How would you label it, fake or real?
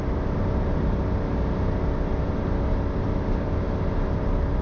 real